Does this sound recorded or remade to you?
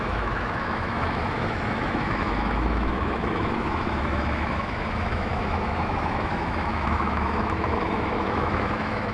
remade